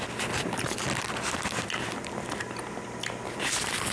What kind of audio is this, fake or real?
real